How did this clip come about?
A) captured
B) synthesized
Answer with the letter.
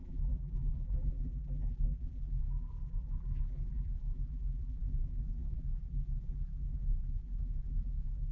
B